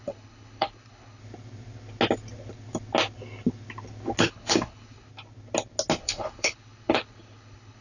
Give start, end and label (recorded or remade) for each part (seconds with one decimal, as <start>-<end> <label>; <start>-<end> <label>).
0.0-1.2 remade; 1.2-4.2 recorded; 4.2-5.1 remade; 5.1-6.0 recorded; 6.0-7.8 remade